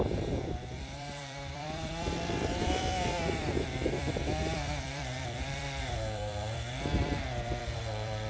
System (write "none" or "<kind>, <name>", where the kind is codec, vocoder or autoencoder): vocoder, BigVGAN v2